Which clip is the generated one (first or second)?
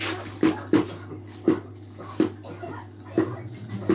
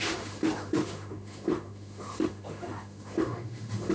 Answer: second